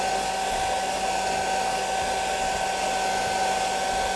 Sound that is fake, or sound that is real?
real